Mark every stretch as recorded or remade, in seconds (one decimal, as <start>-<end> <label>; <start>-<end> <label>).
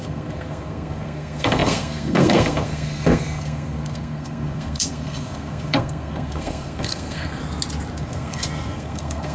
0.0-7.4 remade; 7.4-7.9 recorded; 7.9-9.3 remade